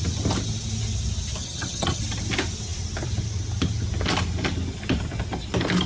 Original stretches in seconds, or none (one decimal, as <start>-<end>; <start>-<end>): 0.0-1.4; 2.0-5.9